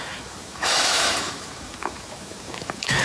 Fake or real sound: fake